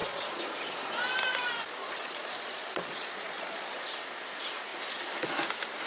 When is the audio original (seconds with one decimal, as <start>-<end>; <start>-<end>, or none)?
0.5-1.8; 3.8-5.9